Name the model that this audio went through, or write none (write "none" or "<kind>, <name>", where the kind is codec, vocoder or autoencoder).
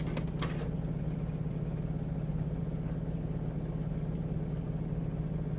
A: none